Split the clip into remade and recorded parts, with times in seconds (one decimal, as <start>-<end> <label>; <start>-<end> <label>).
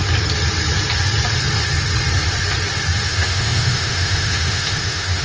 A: 0.0-3.1 recorded; 3.1-5.2 remade